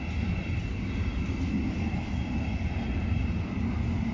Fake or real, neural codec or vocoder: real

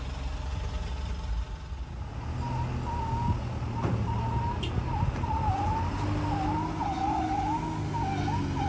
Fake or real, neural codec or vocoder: real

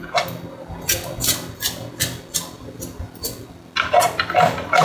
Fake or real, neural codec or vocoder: real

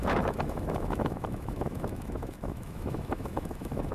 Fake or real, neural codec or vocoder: fake, autoencoder, DAC-VAE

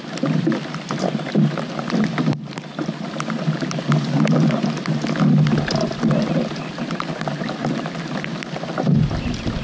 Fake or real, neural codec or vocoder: real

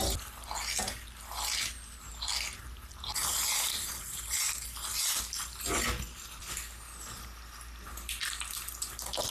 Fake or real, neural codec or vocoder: real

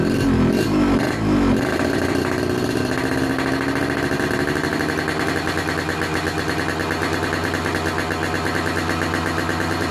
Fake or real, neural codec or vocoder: real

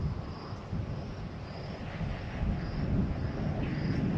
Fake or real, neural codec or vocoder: real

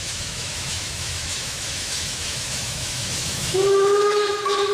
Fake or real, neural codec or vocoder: fake, autoencoder, DAC-VAE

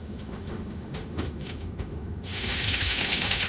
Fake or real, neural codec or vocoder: fake, autoencoder, DAC-VAE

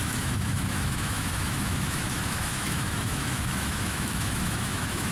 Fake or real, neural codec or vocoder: fake, autoencoder, DAC-VAE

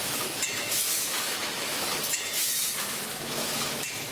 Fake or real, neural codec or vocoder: fake, autoencoder, DAC-VAE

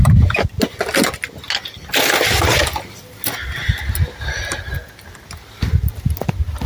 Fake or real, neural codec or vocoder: real